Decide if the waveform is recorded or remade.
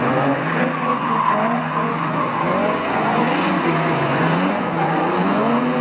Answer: remade